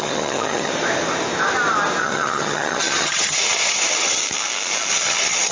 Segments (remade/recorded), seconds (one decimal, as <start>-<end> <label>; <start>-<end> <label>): 0.0-0.7 remade; 0.7-2.0 recorded; 2.0-4.2 remade; 4.2-4.9 recorded; 4.9-5.5 remade